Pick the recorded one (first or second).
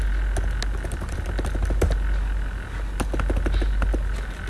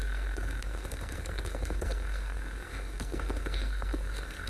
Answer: first